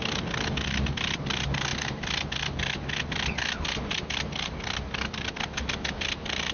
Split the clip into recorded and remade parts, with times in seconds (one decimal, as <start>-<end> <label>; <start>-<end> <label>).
0.0-6.5 recorded